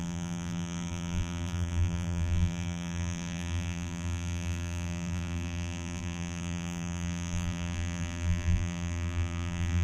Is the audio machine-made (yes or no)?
yes